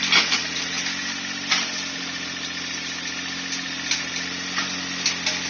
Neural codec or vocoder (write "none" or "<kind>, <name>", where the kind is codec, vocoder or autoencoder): none